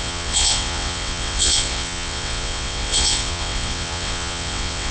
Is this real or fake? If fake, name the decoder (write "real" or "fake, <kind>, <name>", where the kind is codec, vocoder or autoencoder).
fake, vocoder, WaveNeXt